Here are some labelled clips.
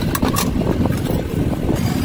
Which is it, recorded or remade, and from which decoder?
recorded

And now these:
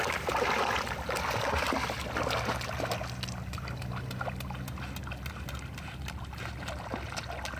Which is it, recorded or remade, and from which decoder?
recorded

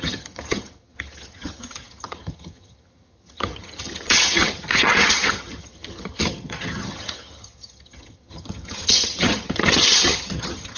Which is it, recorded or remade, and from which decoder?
remade, vocoder, HiFi-GAN